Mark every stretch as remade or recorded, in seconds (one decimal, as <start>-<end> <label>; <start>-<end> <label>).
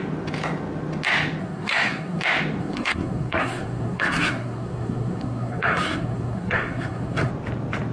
0.0-1.4 recorded; 1.4-2.2 remade; 2.2-2.6 recorded; 2.6-7.3 remade; 7.3-7.9 recorded